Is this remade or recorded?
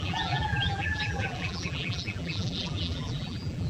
remade